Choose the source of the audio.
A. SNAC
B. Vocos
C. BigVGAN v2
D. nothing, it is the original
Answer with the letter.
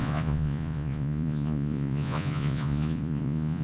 B